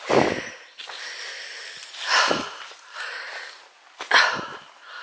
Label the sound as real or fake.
real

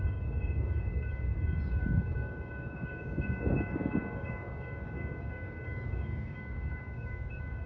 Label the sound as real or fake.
fake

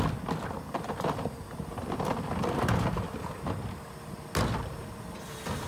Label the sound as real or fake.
real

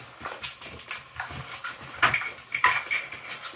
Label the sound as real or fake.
real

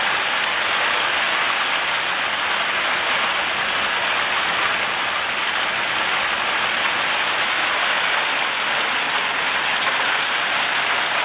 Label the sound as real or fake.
real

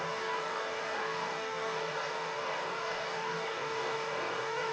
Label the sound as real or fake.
fake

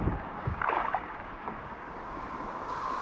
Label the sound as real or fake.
fake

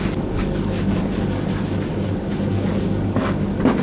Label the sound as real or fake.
fake